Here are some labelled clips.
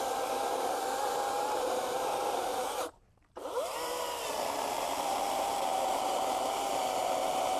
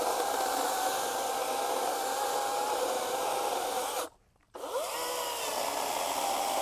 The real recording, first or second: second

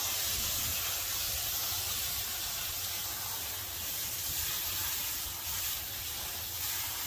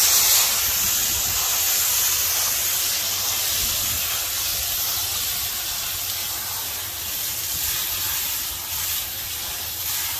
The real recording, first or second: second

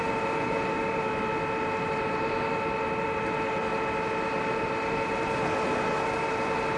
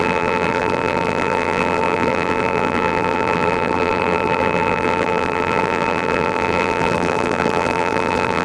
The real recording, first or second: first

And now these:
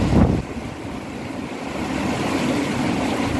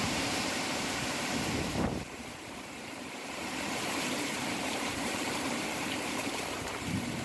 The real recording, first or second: first